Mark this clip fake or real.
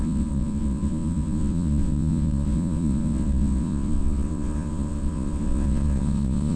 fake